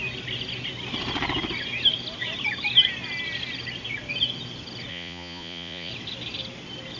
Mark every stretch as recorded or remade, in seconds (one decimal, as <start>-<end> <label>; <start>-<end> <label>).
0.0-4.9 recorded; 4.9-5.9 remade; 5.9-7.0 recorded